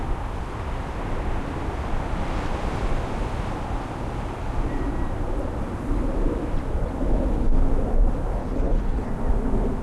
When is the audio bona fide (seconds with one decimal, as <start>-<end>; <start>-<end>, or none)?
0.0-8.4; 9.1-9.8